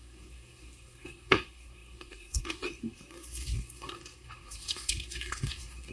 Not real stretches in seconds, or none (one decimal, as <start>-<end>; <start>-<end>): 0.0-5.9